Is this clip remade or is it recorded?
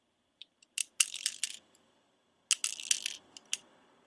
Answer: recorded